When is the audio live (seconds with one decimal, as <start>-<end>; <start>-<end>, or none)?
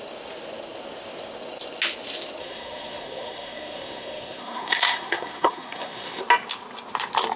0.0-2.4; 6.2-7.4